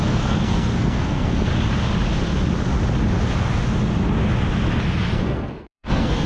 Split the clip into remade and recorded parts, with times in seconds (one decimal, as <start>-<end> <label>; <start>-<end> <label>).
0.0-1.5 remade; 1.5-5.1 recorded; 5.1-6.3 remade